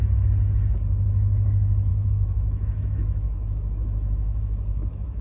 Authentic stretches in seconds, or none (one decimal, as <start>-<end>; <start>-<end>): 0.0-1.9